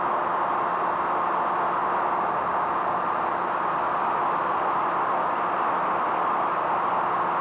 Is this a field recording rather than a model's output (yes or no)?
yes